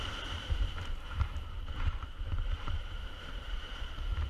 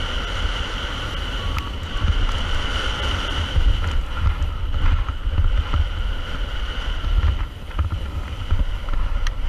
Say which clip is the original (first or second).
second